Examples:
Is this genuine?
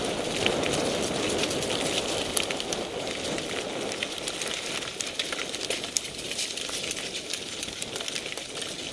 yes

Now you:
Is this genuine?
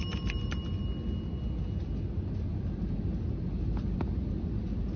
yes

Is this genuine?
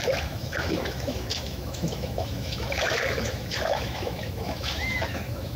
no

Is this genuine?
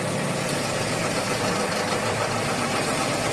no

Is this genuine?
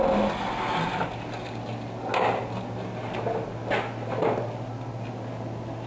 yes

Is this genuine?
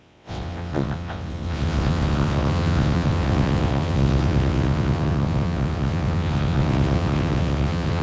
no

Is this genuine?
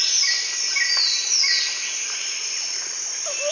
yes